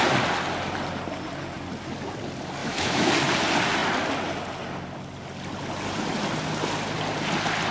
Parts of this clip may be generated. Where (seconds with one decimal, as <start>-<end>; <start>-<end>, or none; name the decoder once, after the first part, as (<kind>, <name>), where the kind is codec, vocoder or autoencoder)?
2.6-3.1 (autoencoder, DAC-VAE)